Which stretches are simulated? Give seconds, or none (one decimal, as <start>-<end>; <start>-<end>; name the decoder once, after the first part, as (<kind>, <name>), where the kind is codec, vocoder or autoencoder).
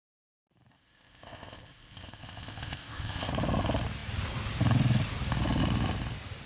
0.7-3.3 (codec, ZipCodec)